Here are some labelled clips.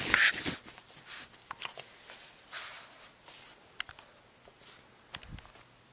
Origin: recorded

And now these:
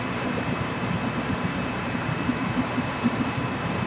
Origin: remade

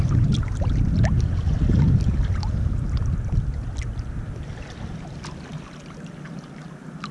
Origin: recorded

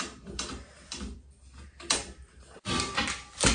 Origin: remade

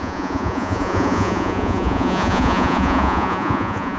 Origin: remade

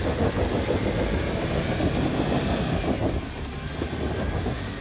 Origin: recorded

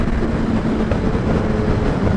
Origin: recorded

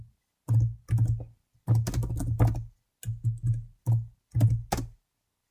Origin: recorded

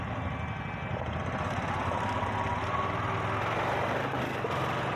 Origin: recorded